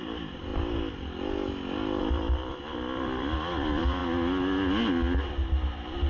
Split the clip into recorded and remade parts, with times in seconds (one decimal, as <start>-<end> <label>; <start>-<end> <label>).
0.0-0.5 remade; 0.5-2.0 recorded; 2.0-4.0 remade; 4.0-6.1 recorded